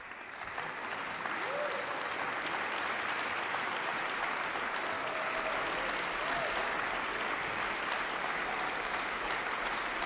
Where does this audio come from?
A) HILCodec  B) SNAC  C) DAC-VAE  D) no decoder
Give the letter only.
D